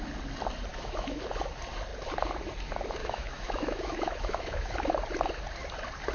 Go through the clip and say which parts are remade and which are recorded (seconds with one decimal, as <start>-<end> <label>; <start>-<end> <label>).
0.0-0.7 recorded; 0.7-1.2 remade; 1.2-3.0 recorded; 3.0-4.9 remade; 4.9-6.1 recorded